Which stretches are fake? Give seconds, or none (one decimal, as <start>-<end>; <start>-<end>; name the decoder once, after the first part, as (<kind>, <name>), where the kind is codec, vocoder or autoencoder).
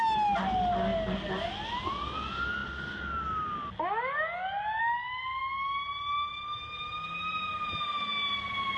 none